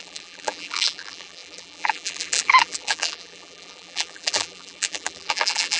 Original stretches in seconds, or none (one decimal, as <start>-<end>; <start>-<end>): none